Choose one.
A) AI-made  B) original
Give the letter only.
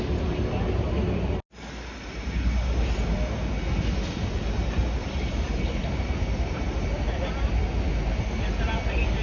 B